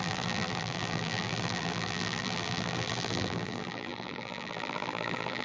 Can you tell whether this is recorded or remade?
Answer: remade